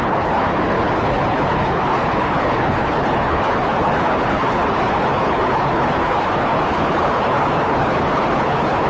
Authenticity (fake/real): fake